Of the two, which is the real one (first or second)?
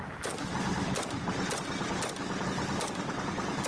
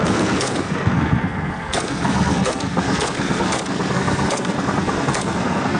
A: first